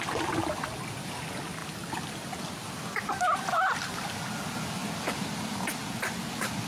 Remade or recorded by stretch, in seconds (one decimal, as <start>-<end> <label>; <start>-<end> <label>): 0.0-6.7 recorded

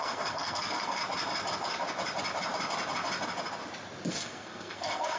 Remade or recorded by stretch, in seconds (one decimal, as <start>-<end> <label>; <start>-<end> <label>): 0.0-1.0 remade; 1.0-4.1 recorded; 4.1-5.2 remade

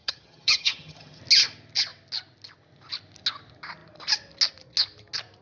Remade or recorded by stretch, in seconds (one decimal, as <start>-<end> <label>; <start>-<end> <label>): 0.0-1.2 remade; 1.2-5.4 recorded

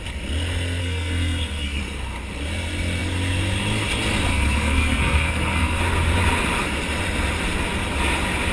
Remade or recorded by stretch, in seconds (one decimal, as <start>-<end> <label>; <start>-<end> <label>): 0.0-0.8 recorded; 0.8-1.8 remade; 1.8-4.3 recorded; 4.3-5.8 remade; 5.8-8.5 recorded

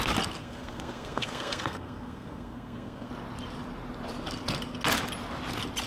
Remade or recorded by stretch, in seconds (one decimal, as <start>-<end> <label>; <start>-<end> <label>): 0.0-0.4 recorded; 0.4-3.1 remade; 3.1-5.9 recorded